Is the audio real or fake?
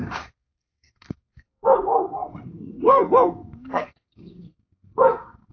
fake